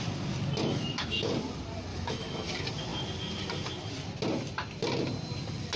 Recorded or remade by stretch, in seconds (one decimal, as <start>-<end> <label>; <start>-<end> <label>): 0.0-0.6 recorded; 0.6-1.3 remade; 1.3-1.9 recorded; 1.9-2.5 remade; 2.5-5.8 recorded